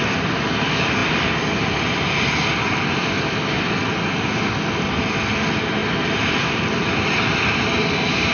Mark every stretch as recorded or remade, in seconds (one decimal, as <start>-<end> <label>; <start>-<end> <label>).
0.0-8.3 recorded

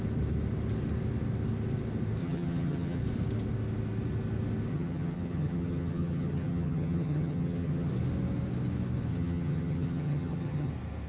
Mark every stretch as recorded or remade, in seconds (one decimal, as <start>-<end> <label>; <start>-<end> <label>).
0.0-2.2 recorded; 2.2-3.0 remade; 3.0-4.7 recorded; 4.7-7.9 remade; 7.9-9.1 recorded; 9.1-10.7 remade; 10.7-11.1 recorded

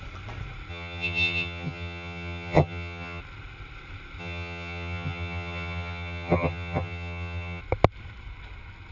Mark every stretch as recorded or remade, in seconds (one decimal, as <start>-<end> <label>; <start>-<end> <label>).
0.0-0.7 recorded; 0.7-3.2 remade; 3.2-4.2 recorded; 4.2-7.6 remade; 7.6-8.9 recorded

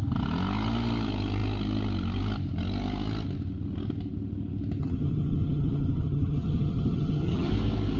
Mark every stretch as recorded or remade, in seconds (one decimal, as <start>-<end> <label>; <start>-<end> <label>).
0.0-4.8 recorded; 4.8-7.5 remade; 7.5-8.0 recorded

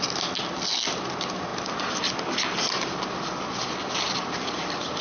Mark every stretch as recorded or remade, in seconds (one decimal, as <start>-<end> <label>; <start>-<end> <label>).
0.0-5.0 recorded

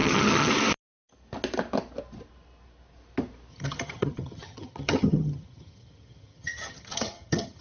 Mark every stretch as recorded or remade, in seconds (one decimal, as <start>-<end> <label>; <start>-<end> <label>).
0.0-0.5 remade; 0.5-3.5 recorded; 3.5-7.6 remade